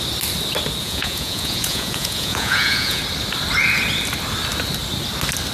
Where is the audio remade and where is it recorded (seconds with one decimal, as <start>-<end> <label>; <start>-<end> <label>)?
0.0-0.8 recorded; 0.8-3.0 remade; 3.0-5.5 recorded